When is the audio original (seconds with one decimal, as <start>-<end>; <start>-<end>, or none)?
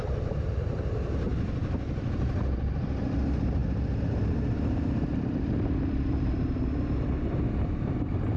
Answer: 1.3-2.6; 3.6-8.4